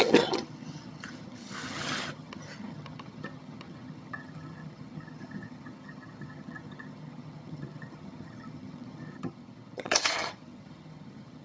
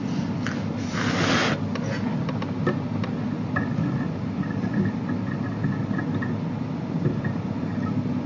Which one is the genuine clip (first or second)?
second